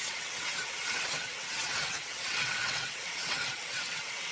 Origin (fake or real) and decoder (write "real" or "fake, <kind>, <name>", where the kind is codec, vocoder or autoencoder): fake, vocoder, WaveNeXt